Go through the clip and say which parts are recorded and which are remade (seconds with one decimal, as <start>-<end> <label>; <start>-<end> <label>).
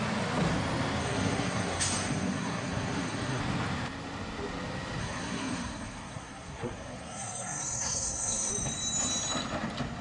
0.0-1.0 recorded; 1.0-3.4 remade; 3.4-5.0 recorded; 5.0-8.5 remade; 8.5-10.0 recorded